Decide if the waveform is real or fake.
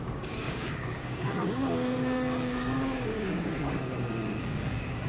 fake